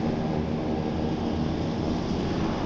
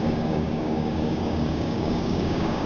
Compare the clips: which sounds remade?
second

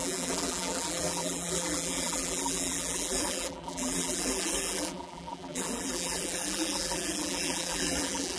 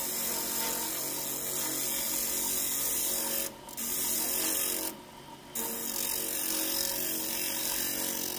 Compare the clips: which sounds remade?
first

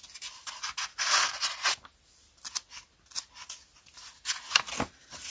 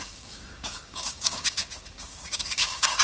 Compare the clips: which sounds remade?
second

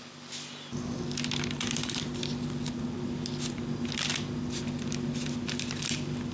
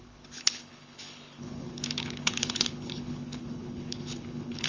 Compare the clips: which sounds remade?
second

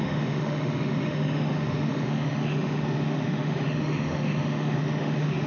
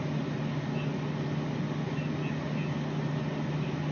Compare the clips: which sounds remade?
first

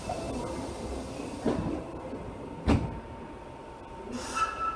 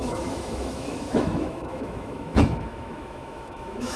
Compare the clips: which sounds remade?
second